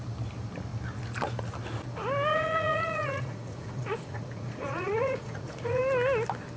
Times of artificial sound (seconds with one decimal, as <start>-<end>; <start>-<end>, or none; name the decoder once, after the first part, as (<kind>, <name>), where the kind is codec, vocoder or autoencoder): 2.3-5.8 (vocoder, Vocos)